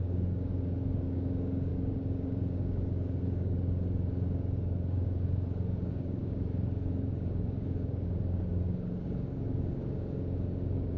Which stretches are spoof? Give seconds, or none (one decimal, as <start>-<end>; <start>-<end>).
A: 0.0-11.0